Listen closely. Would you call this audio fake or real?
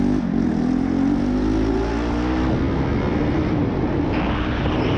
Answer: real